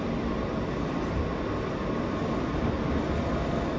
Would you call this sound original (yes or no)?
yes